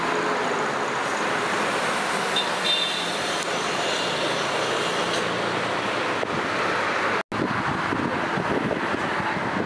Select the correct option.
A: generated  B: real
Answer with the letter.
B